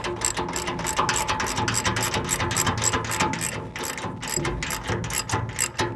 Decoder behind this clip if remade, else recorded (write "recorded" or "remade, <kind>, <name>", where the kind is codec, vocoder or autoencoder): recorded